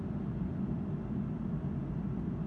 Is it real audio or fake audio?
real